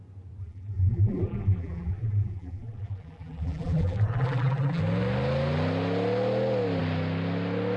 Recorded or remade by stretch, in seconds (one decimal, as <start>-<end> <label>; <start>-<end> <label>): 0.0-0.4 recorded; 0.4-4.8 remade; 4.8-7.8 recorded

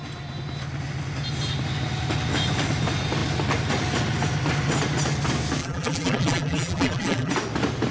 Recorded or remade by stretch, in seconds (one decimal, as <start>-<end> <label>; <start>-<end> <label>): 0.0-5.6 recorded; 5.6-7.3 remade; 7.3-7.9 recorded

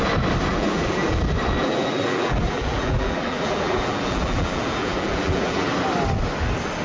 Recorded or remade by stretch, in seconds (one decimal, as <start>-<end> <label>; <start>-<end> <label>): 0.0-0.5 recorded; 0.5-1.2 remade; 1.2-1.6 recorded; 1.6-5.7 remade; 5.7-6.8 recorded

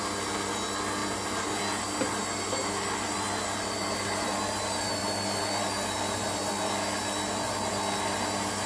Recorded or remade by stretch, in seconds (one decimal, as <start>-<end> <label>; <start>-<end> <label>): 0.0-1.0 recorded; 1.0-1.6 remade; 1.6-8.7 recorded

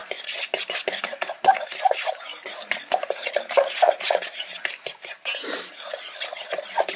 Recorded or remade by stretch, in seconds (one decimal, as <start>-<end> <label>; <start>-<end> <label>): 0.0-1.5 recorded; 1.5-5.7 remade; 5.7-7.0 recorded

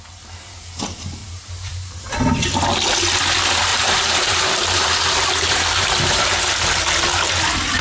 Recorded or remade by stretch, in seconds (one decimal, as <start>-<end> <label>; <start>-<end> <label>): 0.0-1.2 recorded; 1.2-2.0 remade; 2.0-3.7 recorded; 3.7-6.8 remade; 6.8-7.8 recorded